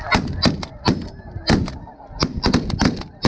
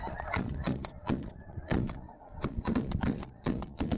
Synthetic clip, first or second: second